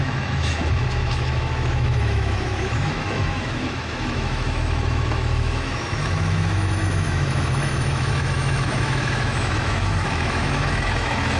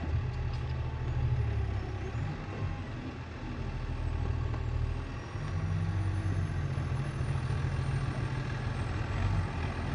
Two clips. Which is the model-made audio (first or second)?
first